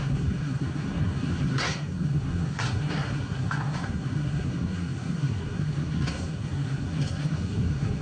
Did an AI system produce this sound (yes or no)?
yes